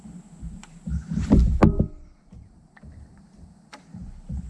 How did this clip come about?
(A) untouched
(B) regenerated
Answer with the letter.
A